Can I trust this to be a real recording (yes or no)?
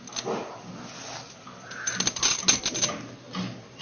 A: yes